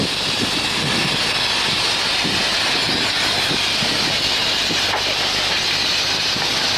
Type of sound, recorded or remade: recorded